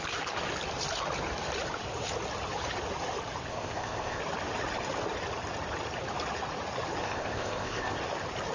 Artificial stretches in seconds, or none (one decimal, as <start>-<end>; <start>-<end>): 3.5-4.2; 7.0-8.0

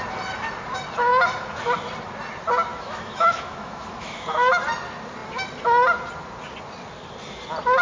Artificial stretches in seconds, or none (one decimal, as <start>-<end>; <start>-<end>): 2.7-4.6

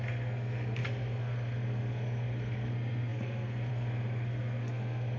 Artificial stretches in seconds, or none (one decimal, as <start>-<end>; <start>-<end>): 0.0-5.2

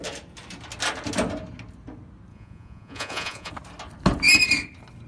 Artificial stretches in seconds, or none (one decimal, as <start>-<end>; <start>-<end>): 2.3-3.5

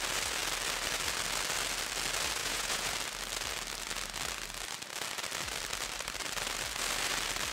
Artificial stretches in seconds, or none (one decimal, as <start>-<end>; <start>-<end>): 2.4-2.9